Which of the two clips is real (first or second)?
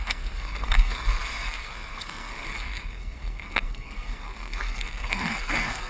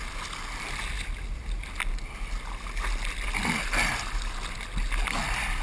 second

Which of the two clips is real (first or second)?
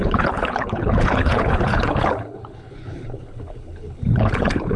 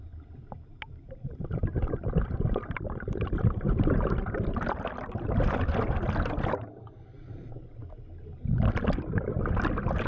second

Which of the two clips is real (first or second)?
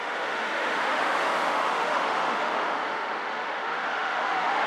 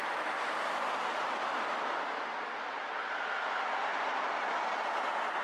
second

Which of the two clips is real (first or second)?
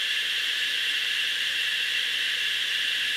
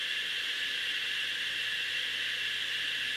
second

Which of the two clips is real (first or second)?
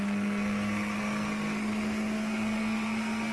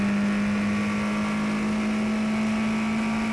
second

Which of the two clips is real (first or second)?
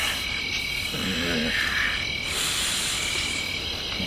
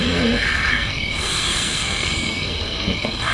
first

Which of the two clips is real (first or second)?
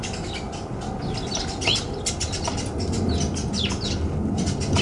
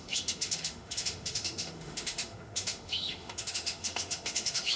first